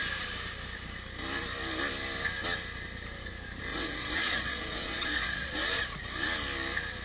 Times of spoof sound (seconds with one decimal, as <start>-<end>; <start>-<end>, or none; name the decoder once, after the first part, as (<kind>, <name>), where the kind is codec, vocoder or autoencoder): 3.7-6.0 (vocoder, Vocos)